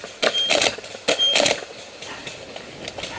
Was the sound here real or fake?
real